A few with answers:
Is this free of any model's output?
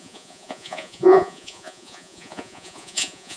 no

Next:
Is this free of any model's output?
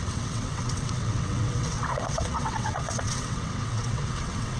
no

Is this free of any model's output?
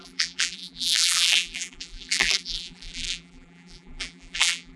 no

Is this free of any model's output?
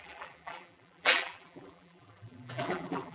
no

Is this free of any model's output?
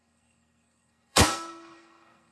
no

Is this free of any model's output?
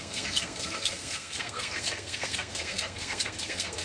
no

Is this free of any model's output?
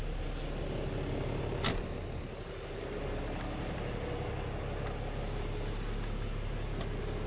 yes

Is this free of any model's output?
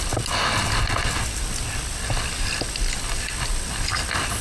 yes